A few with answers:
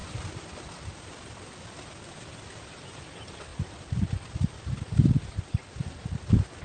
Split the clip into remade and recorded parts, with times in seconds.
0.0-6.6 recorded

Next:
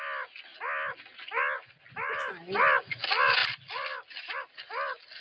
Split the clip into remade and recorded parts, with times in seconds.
0.0-5.2 recorded

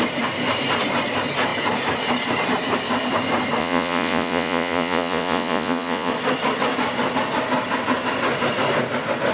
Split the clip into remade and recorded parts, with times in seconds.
0.0-3.6 recorded; 3.6-6.1 remade; 6.1-9.3 recorded

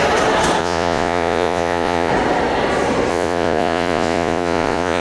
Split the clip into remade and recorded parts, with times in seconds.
0.0-0.6 recorded; 0.6-2.1 remade; 2.1-3.1 recorded; 3.1-5.0 remade